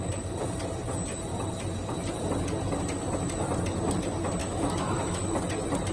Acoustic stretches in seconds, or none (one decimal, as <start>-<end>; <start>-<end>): 0.0-4.4; 5.2-5.9

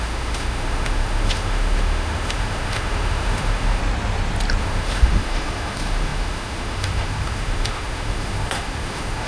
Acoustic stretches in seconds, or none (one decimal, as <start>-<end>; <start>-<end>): 3.8-4.6